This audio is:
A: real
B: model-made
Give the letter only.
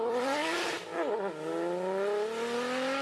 A